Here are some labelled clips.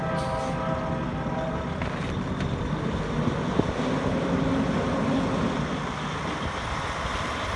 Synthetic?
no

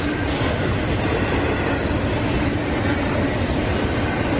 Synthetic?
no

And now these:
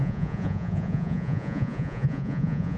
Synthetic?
yes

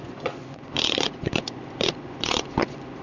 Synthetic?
yes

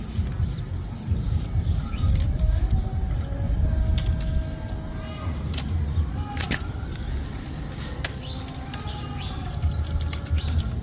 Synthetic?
no